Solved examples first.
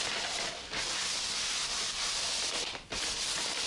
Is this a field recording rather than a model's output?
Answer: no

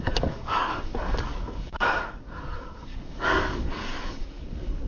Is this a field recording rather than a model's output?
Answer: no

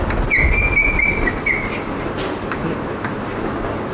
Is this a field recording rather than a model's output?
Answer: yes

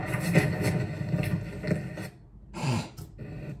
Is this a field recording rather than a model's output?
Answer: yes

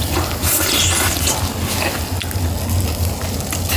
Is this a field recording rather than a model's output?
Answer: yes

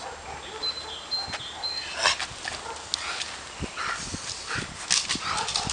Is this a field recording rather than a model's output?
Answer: yes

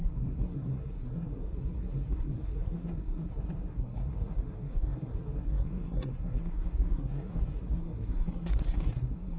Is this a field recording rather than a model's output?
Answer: no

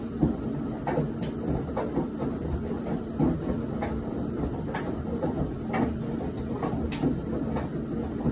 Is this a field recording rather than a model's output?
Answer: yes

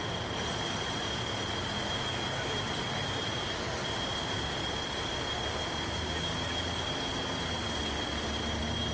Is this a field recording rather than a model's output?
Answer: yes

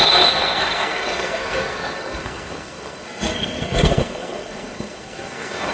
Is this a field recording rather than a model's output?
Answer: no